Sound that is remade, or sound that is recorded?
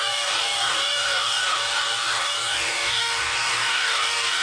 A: remade